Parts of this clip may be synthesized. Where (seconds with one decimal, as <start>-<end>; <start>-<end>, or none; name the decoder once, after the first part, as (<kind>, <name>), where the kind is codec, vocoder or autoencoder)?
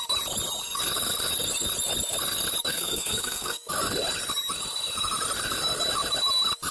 2.7-3.7 (codec, SNAC)